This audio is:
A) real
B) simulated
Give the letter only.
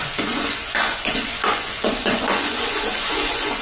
B